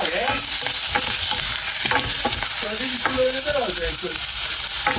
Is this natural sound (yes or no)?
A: no